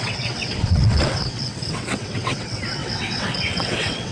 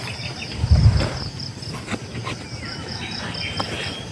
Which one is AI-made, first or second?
first